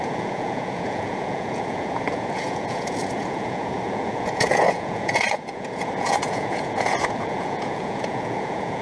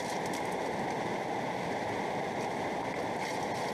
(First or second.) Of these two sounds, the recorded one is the second